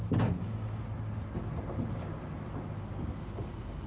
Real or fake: real